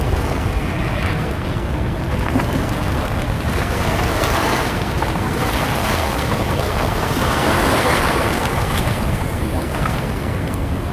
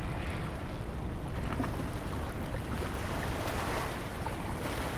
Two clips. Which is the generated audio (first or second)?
first